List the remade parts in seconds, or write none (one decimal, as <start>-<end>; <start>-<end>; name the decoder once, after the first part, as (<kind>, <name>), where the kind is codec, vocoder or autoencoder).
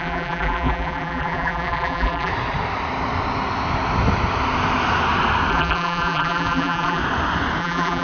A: 0.0-2.3 (vocoder, BigVGAN v2); 5.5-7.0; 7.6-8.0